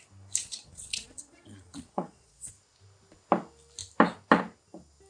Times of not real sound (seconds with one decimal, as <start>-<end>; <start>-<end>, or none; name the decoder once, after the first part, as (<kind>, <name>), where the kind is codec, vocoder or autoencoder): 0.4-2.5 (vocoder, Vocos)